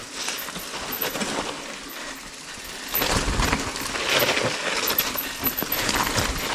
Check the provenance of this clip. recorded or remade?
recorded